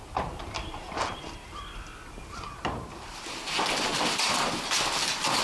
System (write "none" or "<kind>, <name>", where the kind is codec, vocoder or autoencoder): none